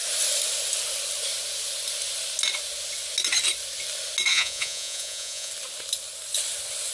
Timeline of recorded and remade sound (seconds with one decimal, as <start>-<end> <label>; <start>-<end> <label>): 0.0-4.3 recorded; 4.3-5.5 remade; 5.5-6.9 recorded